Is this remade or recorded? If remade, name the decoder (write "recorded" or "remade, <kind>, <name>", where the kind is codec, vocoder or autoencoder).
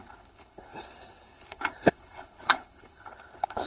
remade, codec, HILCodec